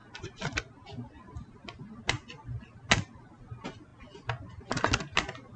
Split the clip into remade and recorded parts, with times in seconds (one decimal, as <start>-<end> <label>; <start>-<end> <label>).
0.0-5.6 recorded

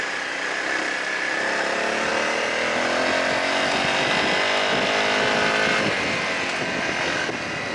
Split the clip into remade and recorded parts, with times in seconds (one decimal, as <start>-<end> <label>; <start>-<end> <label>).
0.0-7.7 recorded

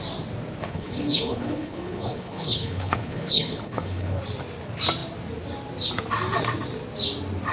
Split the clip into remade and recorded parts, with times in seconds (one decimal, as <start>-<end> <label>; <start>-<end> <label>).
0.0-0.6 recorded; 0.6-4.2 remade; 4.2-7.5 recorded

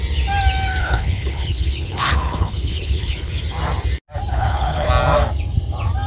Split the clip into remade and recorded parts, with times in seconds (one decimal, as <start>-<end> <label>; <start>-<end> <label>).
0.0-0.8 recorded; 0.8-3.3 remade; 3.3-4.3 recorded; 4.3-4.9 remade; 4.9-6.1 recorded